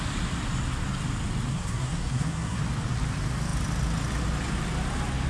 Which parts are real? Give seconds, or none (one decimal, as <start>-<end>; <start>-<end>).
0.0-1.5; 2.6-5.3